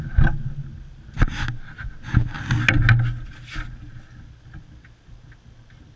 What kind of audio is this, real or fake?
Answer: real